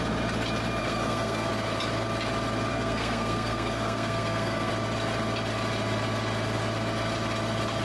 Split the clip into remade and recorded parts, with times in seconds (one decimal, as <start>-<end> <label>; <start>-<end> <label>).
0.0-0.8 recorded; 0.8-1.5 remade; 1.5-2.7 recorded; 2.7-4.7 remade; 4.7-7.8 recorded